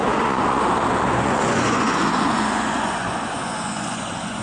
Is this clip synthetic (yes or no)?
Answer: yes